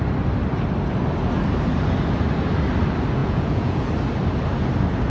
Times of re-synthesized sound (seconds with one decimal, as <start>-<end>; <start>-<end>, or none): 3.2-3.8